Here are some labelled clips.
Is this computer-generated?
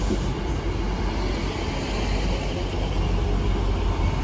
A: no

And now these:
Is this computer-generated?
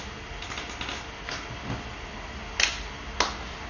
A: no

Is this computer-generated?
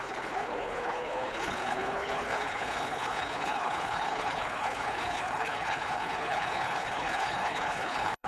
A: yes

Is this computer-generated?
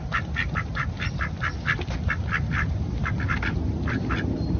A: no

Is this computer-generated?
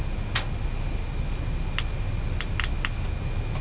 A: no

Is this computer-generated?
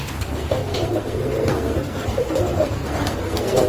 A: yes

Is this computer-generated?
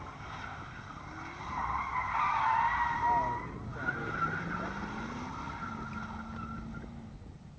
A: no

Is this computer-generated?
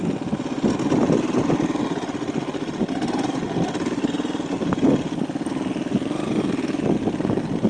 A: no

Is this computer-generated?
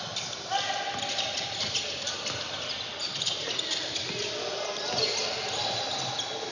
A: no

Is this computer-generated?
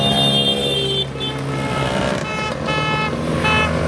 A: no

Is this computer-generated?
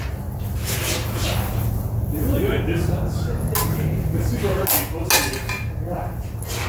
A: no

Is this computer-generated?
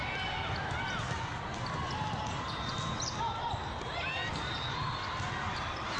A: no